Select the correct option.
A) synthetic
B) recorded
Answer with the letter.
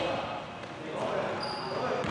B